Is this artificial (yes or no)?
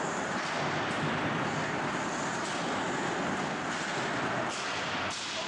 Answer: no